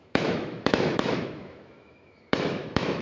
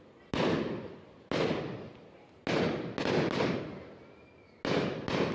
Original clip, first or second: second